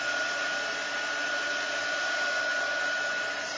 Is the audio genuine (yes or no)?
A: yes